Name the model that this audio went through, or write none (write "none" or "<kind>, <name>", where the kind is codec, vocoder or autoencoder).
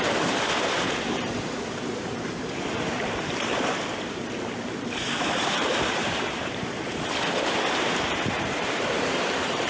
vocoder, BigVGAN v2